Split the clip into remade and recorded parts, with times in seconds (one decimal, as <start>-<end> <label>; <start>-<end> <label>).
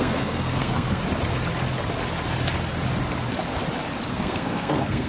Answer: 0.0-1.0 remade; 1.0-4.1 recorded; 4.1-5.1 remade